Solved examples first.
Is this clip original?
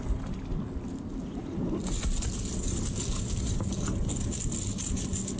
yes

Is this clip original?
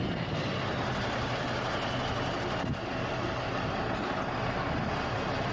yes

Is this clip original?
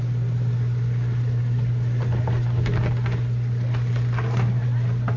yes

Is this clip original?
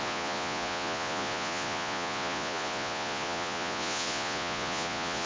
no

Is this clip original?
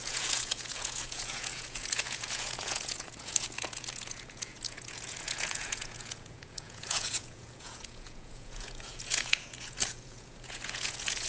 no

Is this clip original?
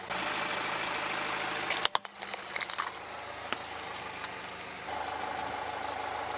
yes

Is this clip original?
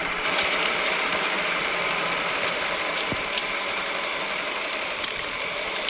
no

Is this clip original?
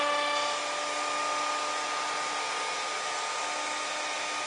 yes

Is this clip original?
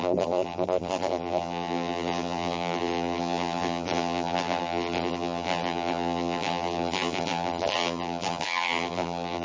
no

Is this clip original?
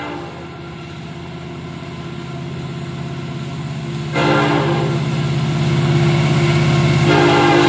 yes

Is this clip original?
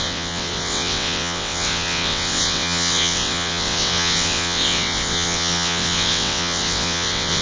no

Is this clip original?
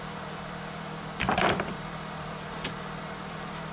no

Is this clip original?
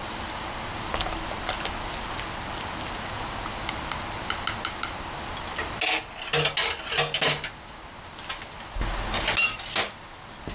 yes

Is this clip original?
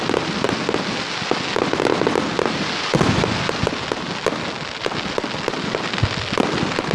yes